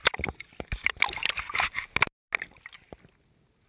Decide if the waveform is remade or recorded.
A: recorded